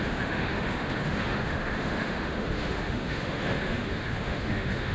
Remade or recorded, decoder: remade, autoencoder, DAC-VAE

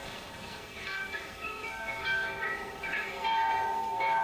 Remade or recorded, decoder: remade, codec, SNAC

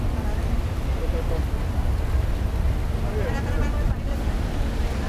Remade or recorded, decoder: recorded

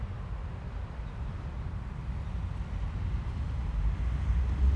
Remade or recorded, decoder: recorded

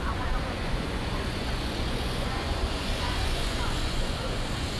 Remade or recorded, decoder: remade, vocoder, Vocos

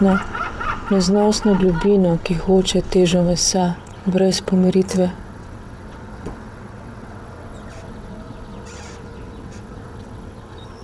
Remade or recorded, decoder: remade, vocoder, WaveNeXt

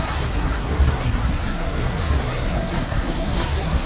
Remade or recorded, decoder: remade, codec, SNAC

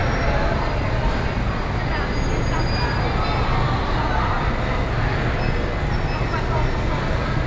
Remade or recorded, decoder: recorded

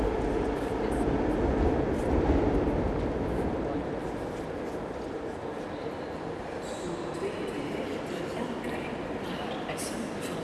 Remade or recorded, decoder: remade, vocoder, BigVGAN v2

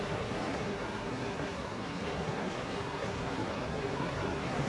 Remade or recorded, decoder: remade, codec, SNAC